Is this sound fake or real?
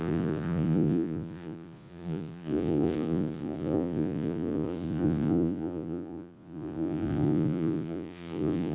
fake